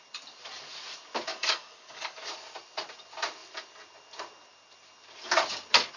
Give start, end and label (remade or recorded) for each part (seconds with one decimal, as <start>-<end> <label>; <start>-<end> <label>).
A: 0.0-1.3 recorded; 1.3-2.3 remade; 2.3-6.0 recorded

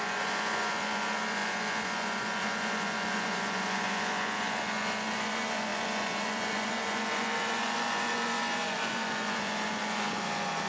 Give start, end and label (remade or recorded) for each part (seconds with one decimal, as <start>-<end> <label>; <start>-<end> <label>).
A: 0.0-10.7 remade

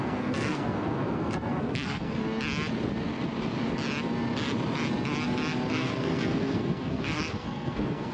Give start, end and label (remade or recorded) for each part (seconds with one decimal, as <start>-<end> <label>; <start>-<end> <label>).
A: 0.0-2.2 remade; 2.2-5.7 recorded; 5.7-8.1 remade

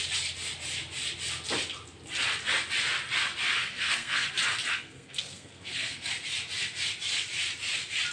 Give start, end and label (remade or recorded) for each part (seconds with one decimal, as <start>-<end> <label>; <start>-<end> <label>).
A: 0.0-3.6 recorded; 3.6-4.3 remade; 4.3-4.7 recorded; 4.7-6.1 remade; 6.1-8.1 recorded